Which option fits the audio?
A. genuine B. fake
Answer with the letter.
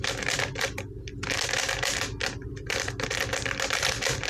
A